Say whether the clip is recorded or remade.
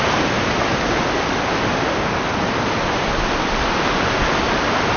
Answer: recorded